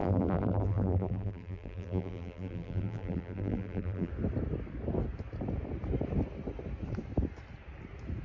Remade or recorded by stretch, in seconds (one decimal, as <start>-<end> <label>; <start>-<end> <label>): 0.0-4.1 remade; 4.1-8.2 recorded